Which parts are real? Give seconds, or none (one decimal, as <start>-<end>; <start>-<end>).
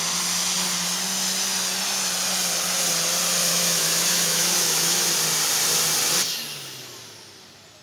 0.0-3.5; 5.1-7.8